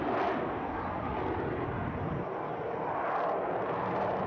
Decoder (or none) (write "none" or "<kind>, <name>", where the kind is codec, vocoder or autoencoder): none